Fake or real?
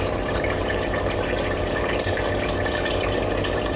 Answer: fake